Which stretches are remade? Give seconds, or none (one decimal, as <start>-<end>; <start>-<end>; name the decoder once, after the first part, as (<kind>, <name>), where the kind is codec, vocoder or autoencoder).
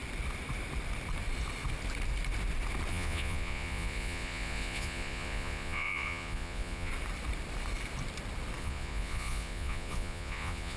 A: 2.9-6.9 (vocoder, Vocos); 8.6-10.8